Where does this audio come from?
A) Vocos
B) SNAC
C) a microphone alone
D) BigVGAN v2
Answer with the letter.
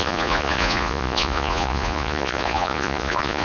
A